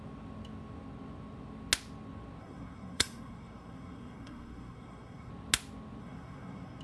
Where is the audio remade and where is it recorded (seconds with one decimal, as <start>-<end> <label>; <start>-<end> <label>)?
0.0-2.4 recorded; 2.4-5.3 remade; 5.3-6.0 recorded; 6.0-6.8 remade